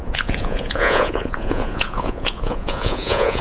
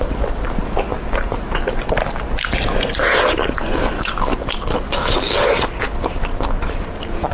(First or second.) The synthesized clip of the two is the first